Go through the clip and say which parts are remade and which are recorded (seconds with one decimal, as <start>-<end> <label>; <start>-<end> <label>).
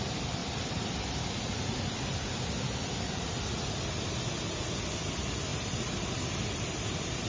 0.0-0.4 recorded; 0.4-4.1 remade; 4.1-5.5 recorded; 5.5-7.3 remade